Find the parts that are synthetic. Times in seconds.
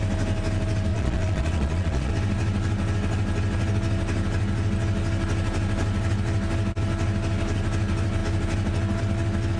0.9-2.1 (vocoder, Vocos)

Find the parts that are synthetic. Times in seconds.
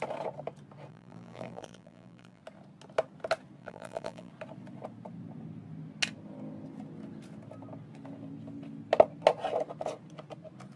0.9-2.4 (vocoder, BigVGAN v2); 3.6-4.3